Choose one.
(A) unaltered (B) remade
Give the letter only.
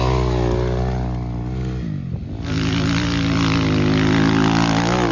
A